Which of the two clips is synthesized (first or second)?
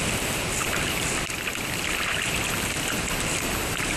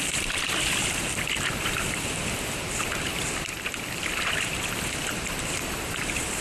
second